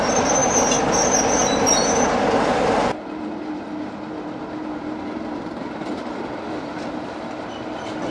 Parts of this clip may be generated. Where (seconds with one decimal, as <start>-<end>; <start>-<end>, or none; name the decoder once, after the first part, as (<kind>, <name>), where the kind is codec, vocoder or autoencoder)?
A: none